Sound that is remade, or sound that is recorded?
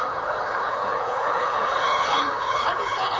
remade